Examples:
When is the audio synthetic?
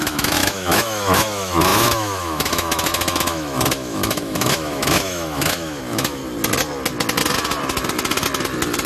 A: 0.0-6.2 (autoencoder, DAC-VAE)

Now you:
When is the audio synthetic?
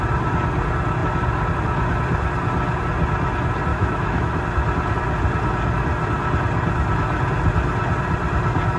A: 3.7-4.4 (autoencoder, DAC-VAE)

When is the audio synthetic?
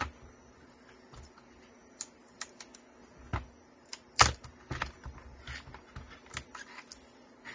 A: none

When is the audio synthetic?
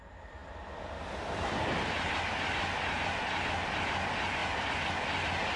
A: none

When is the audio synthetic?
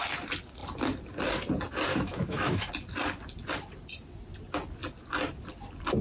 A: 1.9-2.7 (autoencoder, DAC-VAE)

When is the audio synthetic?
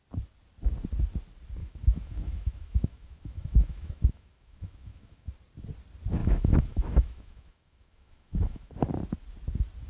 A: 1.6-5.3 (autoencoder, DAC-VAE); 6.2-8.7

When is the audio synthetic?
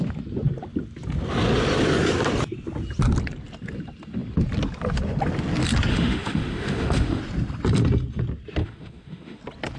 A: 5.9-7.2 (autoencoder, DAC-VAE); 8.6-9.4